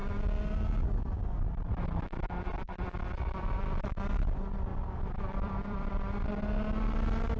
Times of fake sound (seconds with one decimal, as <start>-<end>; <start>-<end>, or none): 2.5-3.9; 4.7-6.4